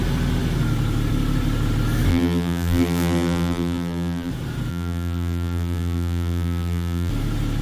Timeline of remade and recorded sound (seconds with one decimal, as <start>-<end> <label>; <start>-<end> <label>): 0.0-2.1 recorded; 2.1-4.3 remade; 4.3-4.7 recorded; 4.7-7.1 remade; 7.1-7.6 recorded